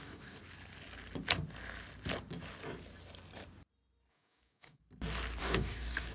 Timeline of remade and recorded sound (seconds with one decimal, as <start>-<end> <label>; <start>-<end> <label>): 0.0-0.4 remade; 0.4-4.1 recorded; 4.1-4.8 remade; 4.8-5.4 recorded; 5.4-6.1 remade